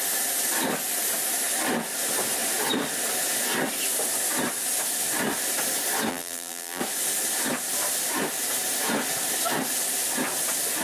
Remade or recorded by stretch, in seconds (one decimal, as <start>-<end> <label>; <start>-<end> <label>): 0.0-6.1 recorded; 6.1-6.8 remade; 6.8-10.8 recorded